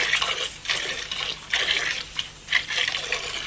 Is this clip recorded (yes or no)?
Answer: yes